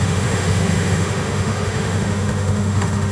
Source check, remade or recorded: remade